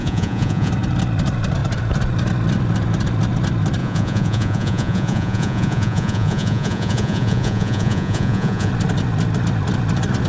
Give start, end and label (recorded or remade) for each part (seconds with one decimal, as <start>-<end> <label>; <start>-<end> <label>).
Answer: 0.0-0.7 remade; 0.7-3.8 recorded; 3.8-8.7 remade; 8.7-10.3 recorded